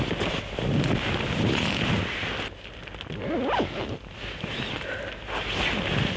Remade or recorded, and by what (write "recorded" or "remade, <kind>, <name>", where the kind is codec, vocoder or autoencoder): recorded